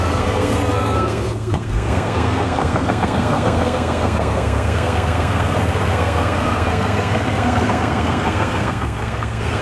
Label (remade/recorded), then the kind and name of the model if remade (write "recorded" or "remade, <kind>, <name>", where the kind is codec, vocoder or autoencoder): remade, codec, SNAC